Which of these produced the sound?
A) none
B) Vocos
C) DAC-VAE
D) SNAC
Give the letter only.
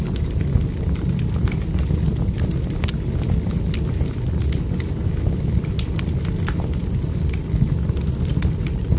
A